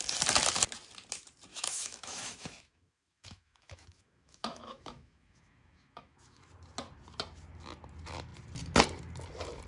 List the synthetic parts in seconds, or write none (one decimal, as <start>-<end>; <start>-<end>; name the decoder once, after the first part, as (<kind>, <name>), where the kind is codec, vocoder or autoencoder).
1.5-6.5 (autoencoder, DAC-VAE)